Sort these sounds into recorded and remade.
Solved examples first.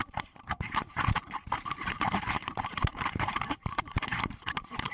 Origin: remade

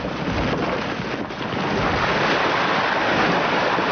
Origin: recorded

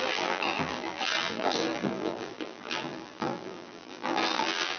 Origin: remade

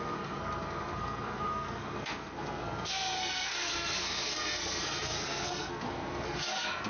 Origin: remade